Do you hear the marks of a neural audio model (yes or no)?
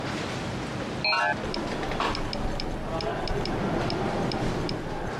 no